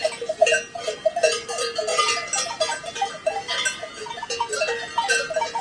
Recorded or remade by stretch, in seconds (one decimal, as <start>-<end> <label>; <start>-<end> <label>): 0.0-5.6 recorded